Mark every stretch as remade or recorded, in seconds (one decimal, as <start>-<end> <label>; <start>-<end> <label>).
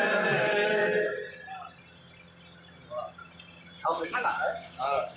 0.0-0.7 remade; 0.7-3.8 recorded; 3.8-5.2 remade